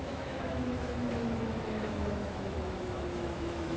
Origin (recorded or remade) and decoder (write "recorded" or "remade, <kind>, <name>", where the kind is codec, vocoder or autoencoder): remade, autoencoder, DAC-VAE